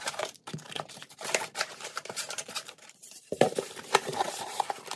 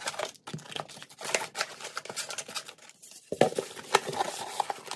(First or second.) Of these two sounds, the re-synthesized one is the first